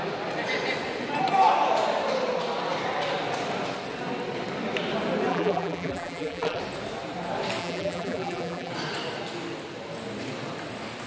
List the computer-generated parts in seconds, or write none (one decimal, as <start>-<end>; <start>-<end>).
5.3-6.6; 7.6-8.7